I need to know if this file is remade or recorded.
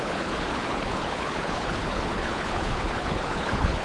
remade